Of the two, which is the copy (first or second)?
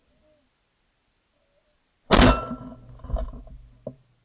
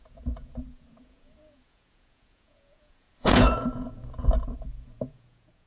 second